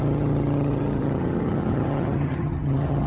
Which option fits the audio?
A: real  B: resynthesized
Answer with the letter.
B